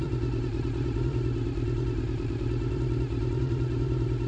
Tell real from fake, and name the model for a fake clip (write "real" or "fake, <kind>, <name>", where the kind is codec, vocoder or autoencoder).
fake, vocoder, BigVGAN v2